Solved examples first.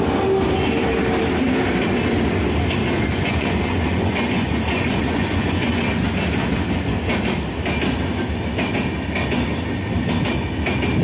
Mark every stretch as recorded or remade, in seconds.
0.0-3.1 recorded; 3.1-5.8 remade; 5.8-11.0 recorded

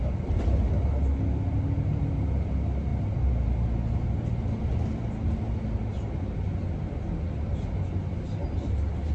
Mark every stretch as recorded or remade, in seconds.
0.0-9.1 recorded

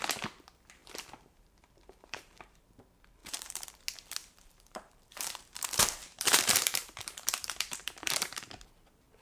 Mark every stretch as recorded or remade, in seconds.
0.0-0.8 recorded; 0.8-2.7 remade; 2.7-3.2 recorded; 3.2-3.8 remade; 3.8-4.2 recorded; 4.2-9.2 remade

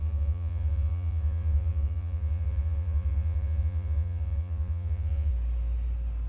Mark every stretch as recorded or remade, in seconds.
0.0-5.3 remade; 5.3-6.3 recorded

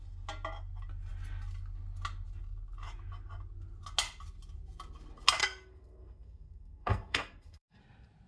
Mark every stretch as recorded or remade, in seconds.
0.0-5.4 recorded; 5.4-7.8 remade; 7.8-8.3 recorded

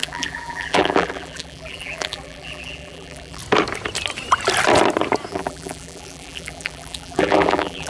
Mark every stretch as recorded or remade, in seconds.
0.0-3.4 remade; 3.4-5.3 recorded; 5.3-7.9 remade

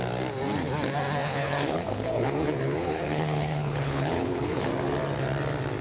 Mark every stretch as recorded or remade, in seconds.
0.0-1.2 recorded; 1.2-4.7 remade; 4.7-5.8 recorded